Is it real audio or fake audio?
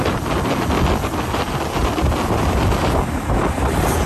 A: real